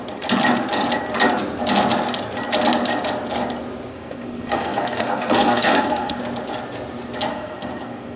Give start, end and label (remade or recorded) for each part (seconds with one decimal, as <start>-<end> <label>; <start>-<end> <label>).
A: 0.0-3.9 recorded; 3.9-6.2 remade; 6.2-7.3 recorded; 7.3-8.2 remade